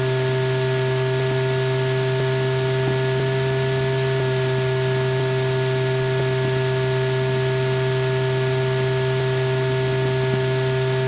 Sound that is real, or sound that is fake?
real